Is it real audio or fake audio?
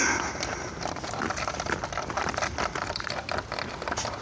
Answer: real